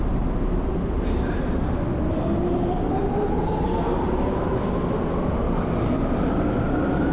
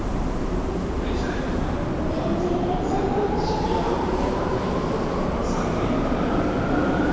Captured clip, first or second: first